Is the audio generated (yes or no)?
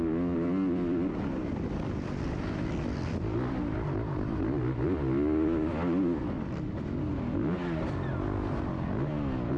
no